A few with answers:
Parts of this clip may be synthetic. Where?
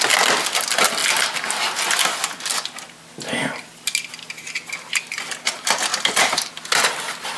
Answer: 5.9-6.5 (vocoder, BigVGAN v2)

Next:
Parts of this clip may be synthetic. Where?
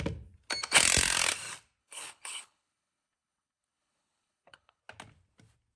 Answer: 1.8-4.8 (codec, HILCodec)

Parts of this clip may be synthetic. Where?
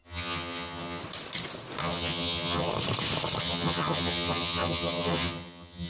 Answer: 0.0-1.0 (vocoder, HiFi-GAN); 1.8-2.7; 3.4-5.9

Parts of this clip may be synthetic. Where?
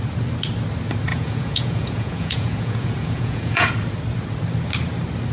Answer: 1.1-3.7 (vocoder, Vocos)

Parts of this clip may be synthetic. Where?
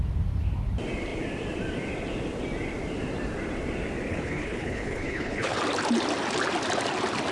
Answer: 4.1-5.6 (codec, HILCodec)